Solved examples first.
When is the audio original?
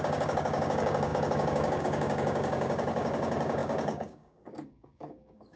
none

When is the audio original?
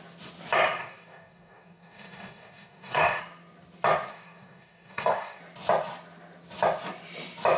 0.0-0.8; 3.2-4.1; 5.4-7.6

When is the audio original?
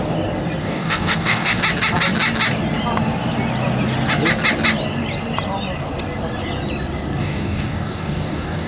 0.0-0.6; 1.6-7.2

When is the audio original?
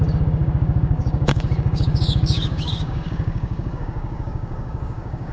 none